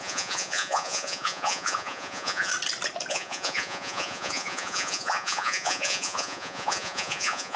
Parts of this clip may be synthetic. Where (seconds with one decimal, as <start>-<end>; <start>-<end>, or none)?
0.0-2.5; 3.1-7.6